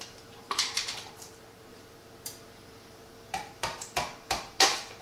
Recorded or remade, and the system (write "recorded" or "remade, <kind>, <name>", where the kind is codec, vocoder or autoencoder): remade, vocoder, BigVGAN v2